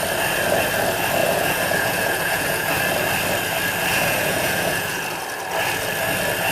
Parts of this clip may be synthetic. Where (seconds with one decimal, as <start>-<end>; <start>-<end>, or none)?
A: 1.2-2.7; 3.9-5.0